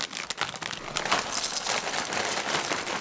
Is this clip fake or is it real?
real